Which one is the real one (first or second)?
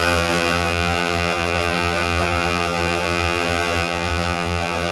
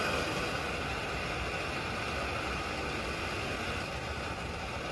second